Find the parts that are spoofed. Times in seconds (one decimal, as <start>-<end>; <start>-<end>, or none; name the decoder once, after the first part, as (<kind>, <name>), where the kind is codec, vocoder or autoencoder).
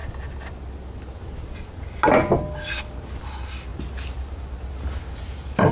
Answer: none